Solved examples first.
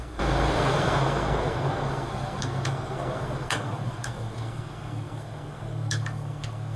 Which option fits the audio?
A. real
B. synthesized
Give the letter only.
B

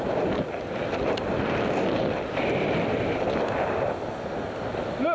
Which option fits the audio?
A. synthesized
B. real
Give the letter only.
B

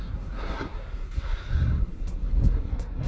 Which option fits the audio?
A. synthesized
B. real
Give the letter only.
A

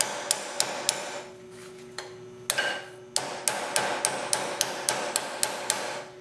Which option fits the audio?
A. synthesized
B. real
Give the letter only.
B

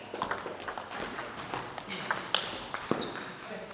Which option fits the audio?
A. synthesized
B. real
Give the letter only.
B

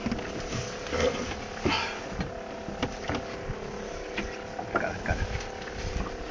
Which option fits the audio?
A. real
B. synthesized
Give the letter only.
A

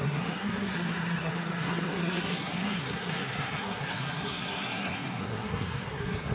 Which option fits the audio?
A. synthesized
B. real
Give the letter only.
A